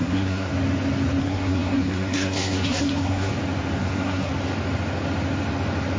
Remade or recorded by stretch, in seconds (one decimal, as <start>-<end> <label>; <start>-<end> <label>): 0.0-0.5 remade; 0.5-1.2 recorded; 1.2-3.3 remade; 3.3-3.8 recorded; 3.8-4.3 remade; 4.3-6.0 recorded